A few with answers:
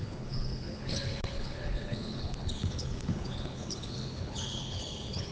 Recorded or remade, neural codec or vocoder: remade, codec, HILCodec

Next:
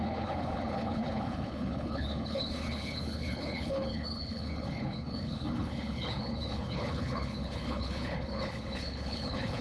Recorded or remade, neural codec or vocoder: remade, codec, HILCodec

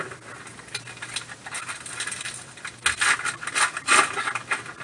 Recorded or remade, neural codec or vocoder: recorded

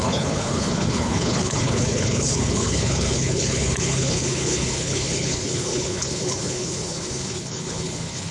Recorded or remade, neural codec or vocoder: remade, codec, HILCodec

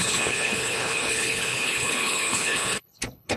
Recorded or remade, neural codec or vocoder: remade, codec, HILCodec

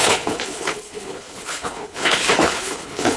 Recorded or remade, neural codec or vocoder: remade, codec, HILCodec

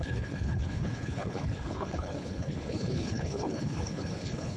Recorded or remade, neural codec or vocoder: remade, codec, HILCodec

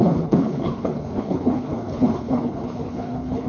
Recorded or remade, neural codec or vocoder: remade, codec, HILCodec